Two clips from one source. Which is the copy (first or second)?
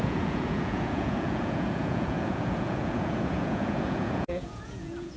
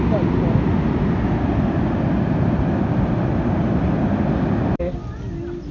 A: first